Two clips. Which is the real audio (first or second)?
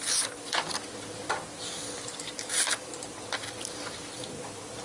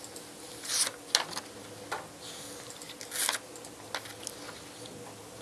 second